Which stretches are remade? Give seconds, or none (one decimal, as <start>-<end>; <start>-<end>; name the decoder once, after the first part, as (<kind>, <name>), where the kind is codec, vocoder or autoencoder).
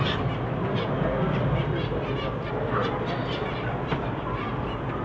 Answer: none